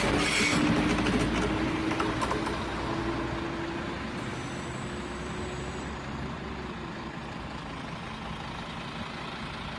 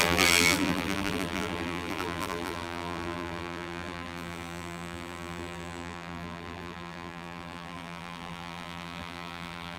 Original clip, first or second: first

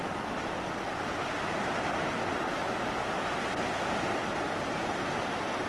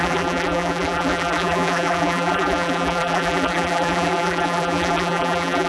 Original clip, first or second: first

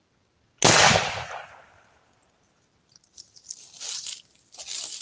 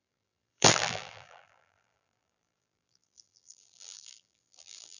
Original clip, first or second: first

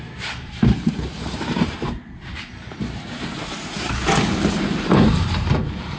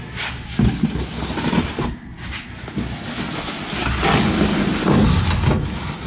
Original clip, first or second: second